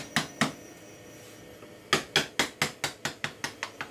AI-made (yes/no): no